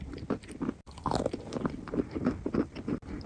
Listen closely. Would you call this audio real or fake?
real